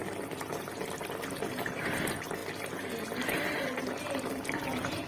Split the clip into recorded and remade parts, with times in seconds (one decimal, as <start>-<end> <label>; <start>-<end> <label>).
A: 0.0-5.1 recorded